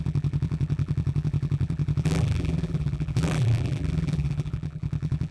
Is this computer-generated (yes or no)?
yes